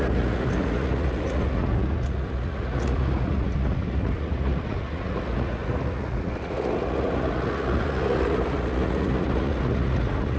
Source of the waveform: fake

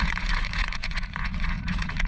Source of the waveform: fake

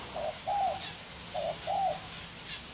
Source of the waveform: real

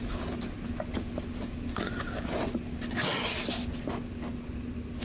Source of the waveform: real